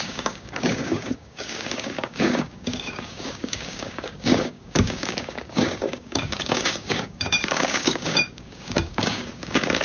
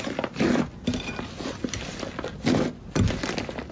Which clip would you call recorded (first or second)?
second